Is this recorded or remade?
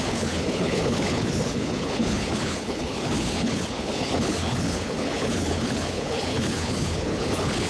remade